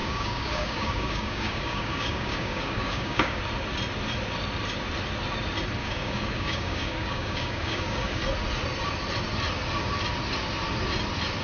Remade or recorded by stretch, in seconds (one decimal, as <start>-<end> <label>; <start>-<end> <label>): 0.0-3.4 remade; 3.4-5.8 recorded; 5.8-8.2 remade; 8.2-11.4 recorded